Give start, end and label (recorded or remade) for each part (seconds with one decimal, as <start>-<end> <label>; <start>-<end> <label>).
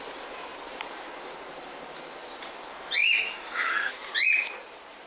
0.0-3.0 recorded; 3.0-4.1 remade; 4.1-5.1 recorded